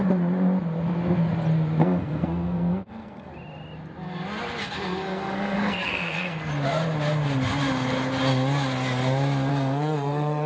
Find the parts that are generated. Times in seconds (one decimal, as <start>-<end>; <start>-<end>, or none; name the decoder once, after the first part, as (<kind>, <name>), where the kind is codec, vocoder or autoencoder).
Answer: 1.8-3.3 (codec, SNAC); 4.6-6.5; 9.5-10.5